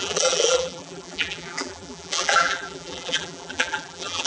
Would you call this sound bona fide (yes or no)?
no